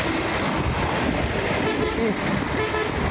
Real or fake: real